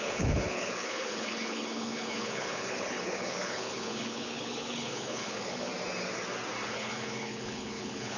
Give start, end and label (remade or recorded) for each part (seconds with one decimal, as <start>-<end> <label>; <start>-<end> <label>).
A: 0.0-5.7 remade; 5.7-6.7 recorded; 6.7-8.2 remade

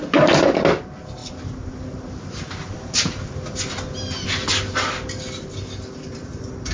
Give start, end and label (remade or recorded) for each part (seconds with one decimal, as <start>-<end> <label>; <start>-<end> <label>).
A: 0.0-6.7 recorded

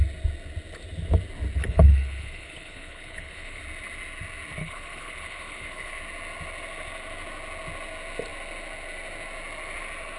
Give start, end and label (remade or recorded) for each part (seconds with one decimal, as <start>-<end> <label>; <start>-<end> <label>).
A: 0.0-1.6 recorded; 1.6-3.6 remade; 3.6-4.6 recorded; 4.6-6.0 remade; 6.0-10.2 recorded